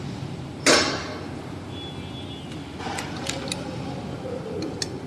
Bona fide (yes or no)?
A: yes